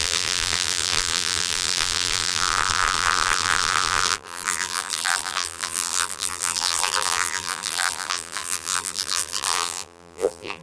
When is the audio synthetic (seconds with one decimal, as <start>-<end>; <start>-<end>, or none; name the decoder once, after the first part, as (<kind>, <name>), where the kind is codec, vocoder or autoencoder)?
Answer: 0.0-10.6 (vocoder, BigVGAN v2)